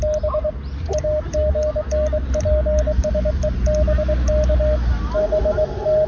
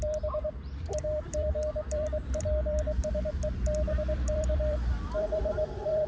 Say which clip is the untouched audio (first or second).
first